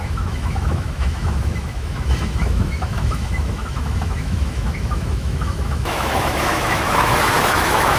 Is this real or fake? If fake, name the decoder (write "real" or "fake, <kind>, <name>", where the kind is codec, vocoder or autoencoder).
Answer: fake, autoencoder, DAC-VAE